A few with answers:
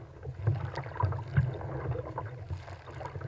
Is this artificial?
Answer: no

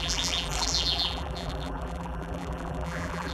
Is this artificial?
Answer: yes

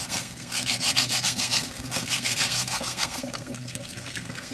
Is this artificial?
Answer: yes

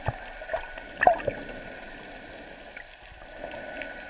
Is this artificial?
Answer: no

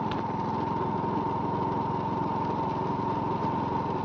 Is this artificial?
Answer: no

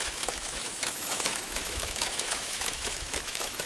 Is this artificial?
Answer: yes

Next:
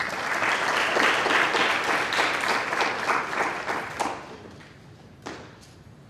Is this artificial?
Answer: no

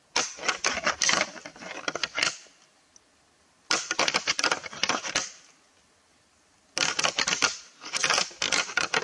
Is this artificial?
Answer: no